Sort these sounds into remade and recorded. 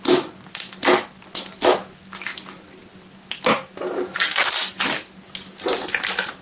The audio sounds recorded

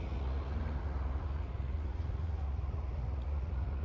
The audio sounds remade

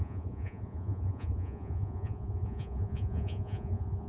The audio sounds remade